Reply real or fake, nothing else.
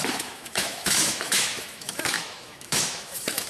fake